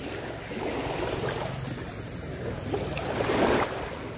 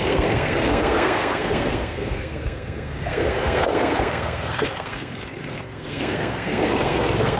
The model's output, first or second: second